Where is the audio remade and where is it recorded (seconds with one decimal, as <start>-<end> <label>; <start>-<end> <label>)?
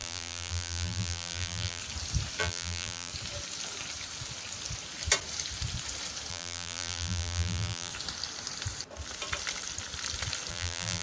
0.0-1.8 remade; 1.8-2.4 recorded; 2.4-3.1 remade; 3.1-6.3 recorded; 6.3-7.9 remade; 7.9-10.5 recorded; 10.5-11.0 remade